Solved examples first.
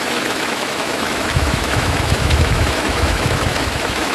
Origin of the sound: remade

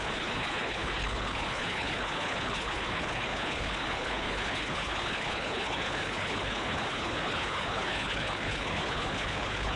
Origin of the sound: remade